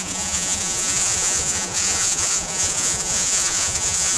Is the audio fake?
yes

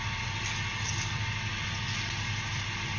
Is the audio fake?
no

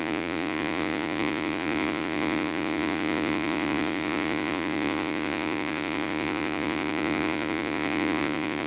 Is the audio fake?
yes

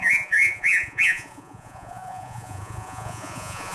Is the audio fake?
yes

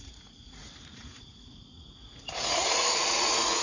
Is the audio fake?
yes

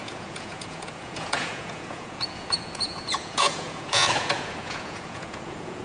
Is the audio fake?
yes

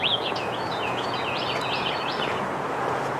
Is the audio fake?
yes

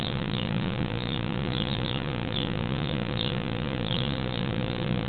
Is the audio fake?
yes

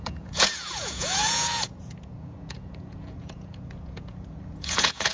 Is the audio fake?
yes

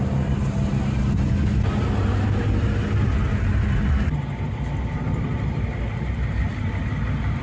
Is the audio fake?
no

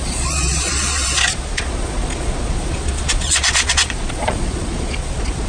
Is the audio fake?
yes